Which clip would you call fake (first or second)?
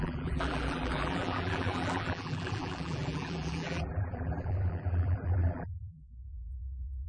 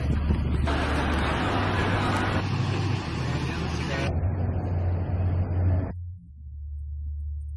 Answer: first